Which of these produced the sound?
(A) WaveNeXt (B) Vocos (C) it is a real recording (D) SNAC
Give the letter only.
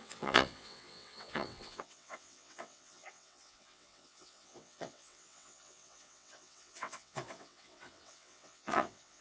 A